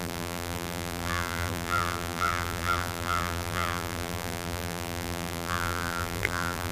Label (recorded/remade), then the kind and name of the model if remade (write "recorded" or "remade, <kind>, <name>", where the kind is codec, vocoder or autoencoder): remade, vocoder, BigVGAN v2